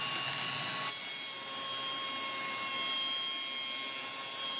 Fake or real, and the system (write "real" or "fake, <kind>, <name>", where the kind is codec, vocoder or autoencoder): real